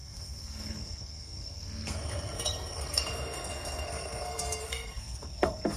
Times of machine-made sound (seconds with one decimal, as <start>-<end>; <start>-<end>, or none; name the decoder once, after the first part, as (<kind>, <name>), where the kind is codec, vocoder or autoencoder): 0.0-5.8 (codec, SNAC)